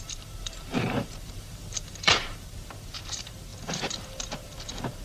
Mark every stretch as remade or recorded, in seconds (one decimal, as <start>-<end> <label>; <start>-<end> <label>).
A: 0.0-5.0 remade